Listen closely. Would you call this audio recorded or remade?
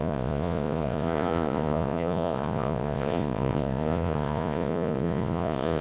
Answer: remade